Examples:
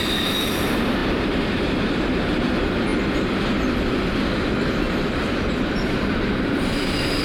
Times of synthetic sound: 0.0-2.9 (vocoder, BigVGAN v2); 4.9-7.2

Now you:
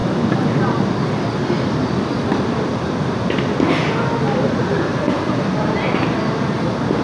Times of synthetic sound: none

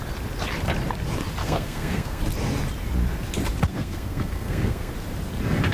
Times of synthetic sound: 1.4-2.2 (codec, SNAC); 3.7-4.9

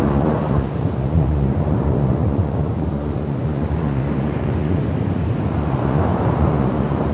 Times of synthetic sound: 0.0-4.8 (vocoder, Vocos); 5.5-7.1